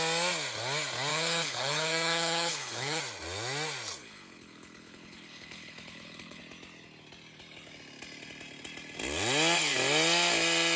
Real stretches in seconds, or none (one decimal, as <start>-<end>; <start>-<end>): 0.0-1.1; 3.0-4.0; 6.4-10.8